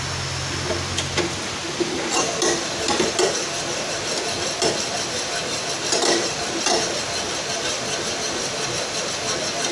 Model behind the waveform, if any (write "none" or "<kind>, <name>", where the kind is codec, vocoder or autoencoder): none